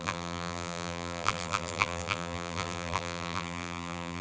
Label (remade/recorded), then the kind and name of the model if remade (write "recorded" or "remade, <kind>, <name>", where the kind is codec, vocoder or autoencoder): remade, vocoder, BigVGAN v2